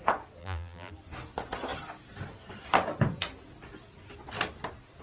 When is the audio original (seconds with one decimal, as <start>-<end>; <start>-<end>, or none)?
0.0-0.4; 0.9-5.0